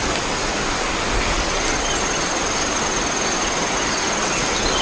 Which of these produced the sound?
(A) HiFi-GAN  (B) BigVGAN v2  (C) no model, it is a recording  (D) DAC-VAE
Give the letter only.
C